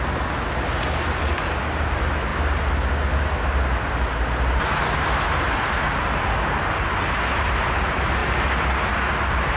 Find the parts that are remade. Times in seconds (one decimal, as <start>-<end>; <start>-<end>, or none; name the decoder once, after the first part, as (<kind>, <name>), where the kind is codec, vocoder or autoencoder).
none